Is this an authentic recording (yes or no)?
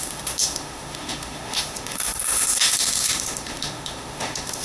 no